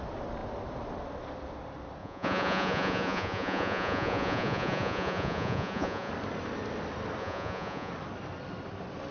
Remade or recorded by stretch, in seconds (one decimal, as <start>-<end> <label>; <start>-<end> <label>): 0.0-2.0 recorded; 2.0-6.1 remade; 6.1-7.2 recorded; 7.2-7.9 remade; 7.9-9.1 recorded